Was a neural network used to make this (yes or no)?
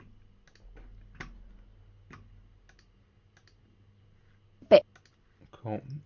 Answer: no